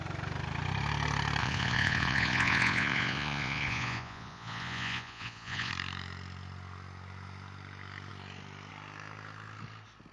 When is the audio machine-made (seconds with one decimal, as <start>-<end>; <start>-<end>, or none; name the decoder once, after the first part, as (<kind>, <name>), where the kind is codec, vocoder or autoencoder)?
1.4-5.7 (vocoder, Vocos)